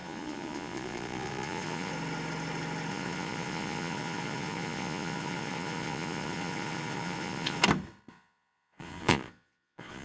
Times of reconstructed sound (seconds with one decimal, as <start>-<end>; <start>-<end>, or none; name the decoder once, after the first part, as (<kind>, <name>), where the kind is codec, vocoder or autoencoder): 0.0-1.9 (vocoder, Vocos); 2.9-7.6; 8.1-10.0

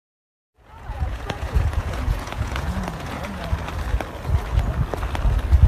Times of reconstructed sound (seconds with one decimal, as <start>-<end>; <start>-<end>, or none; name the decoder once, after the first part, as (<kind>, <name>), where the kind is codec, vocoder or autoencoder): 0.0-3.4 (vocoder, Vocos)